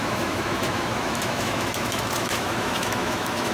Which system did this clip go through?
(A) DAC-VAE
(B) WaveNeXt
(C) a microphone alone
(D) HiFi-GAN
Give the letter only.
A